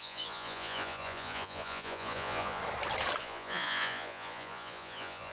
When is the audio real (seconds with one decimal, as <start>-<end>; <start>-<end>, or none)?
2.6-3.2